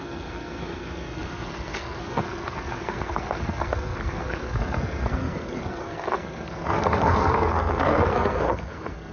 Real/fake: fake